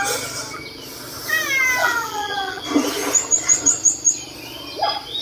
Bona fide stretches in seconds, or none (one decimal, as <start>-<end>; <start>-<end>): 0.0-1.8; 2.6-5.2